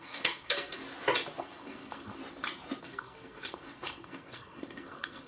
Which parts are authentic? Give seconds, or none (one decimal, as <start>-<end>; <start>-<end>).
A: 0.8-1.4; 2.2-2.8